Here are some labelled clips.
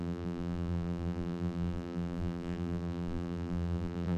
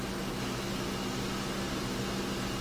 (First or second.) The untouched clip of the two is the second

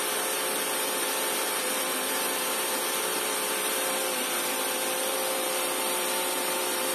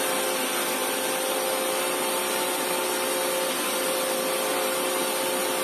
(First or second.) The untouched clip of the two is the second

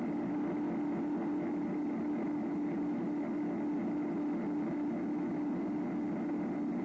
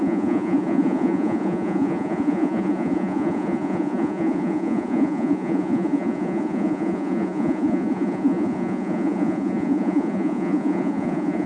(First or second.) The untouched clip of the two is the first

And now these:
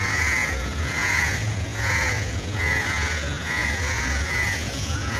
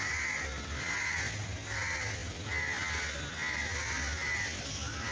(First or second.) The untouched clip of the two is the second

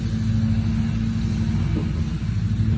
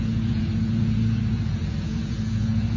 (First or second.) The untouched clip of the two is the first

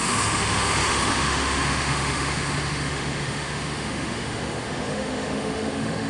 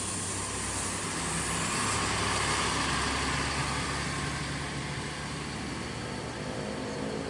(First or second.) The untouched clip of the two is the second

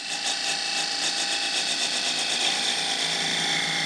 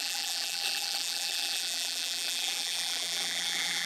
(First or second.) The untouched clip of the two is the first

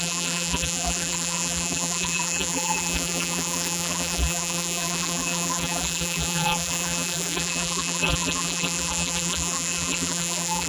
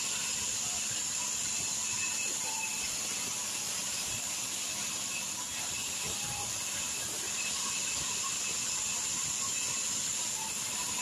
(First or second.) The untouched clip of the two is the second